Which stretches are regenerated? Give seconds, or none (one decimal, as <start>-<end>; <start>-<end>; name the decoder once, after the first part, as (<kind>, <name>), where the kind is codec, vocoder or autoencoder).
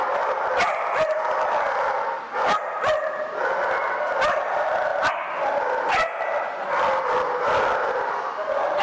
none